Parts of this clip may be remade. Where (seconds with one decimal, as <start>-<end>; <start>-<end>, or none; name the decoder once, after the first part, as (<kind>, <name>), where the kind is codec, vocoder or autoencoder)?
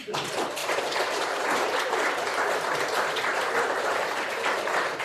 0.6-1.9 (vocoder, BigVGAN v2); 2.3-5.0